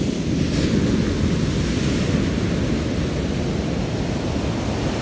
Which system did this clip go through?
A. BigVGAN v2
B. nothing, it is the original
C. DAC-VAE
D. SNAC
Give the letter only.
B